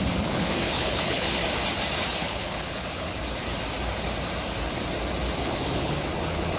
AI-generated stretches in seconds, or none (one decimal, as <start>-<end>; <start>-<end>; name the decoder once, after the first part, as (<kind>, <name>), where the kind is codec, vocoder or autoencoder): 0.0-1.4 (codec, HILCodec); 2.1-3.2; 5.4-6.6